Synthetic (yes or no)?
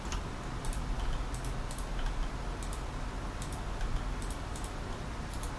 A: no